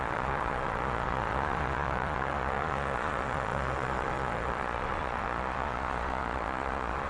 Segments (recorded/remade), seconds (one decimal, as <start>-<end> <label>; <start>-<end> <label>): 0.0-7.1 remade